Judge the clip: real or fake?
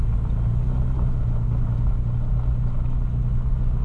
real